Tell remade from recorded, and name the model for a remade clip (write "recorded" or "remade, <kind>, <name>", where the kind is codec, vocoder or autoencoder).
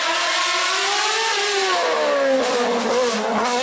recorded